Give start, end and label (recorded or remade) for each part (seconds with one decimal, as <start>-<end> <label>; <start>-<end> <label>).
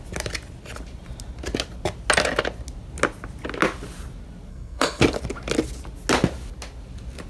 0.0-4.5 recorded; 4.5-5.0 remade; 5.0-7.3 recorded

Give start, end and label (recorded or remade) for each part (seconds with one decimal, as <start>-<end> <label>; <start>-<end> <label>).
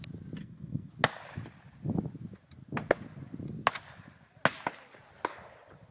0.0-0.4 recorded; 0.4-0.9 remade; 0.9-5.9 recorded